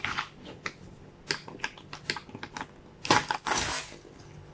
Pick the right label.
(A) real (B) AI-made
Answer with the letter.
A